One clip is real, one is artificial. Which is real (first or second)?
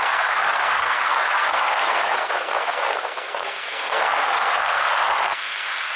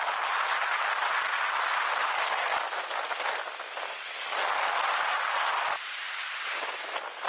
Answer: second